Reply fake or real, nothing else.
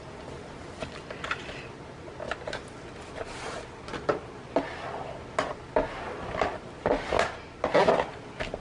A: real